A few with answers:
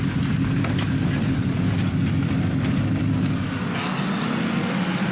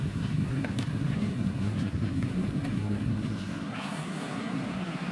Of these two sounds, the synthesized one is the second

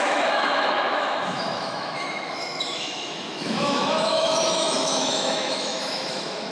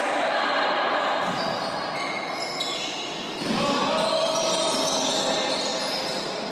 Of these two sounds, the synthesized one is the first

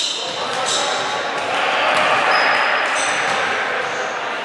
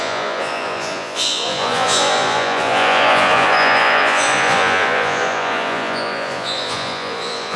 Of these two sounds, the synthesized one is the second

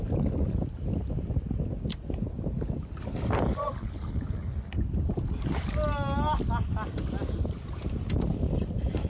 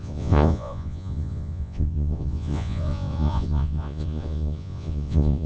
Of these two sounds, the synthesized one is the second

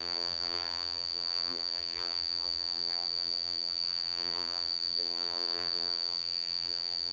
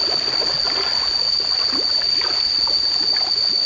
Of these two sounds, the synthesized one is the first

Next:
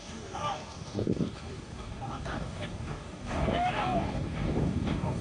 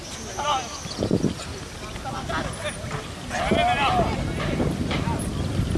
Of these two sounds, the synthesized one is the first